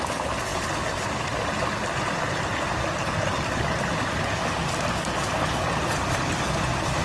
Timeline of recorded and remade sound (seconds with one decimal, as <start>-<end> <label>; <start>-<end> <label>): 0.0-7.0 recorded